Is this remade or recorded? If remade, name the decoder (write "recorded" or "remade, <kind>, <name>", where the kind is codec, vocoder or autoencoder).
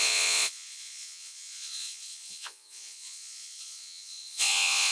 remade, vocoder, Vocos